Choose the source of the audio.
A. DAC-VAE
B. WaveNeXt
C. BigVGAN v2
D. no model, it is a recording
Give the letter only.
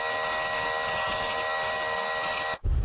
D